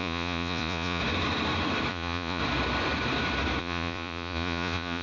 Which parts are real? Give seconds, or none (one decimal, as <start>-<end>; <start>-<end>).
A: 1.0-1.9; 2.4-3.6